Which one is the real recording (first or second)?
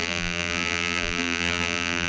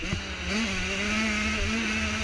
second